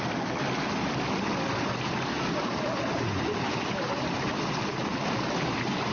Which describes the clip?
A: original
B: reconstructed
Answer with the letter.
A